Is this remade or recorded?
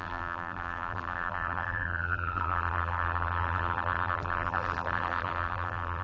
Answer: remade